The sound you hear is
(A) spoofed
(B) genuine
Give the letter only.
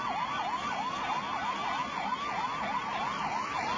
B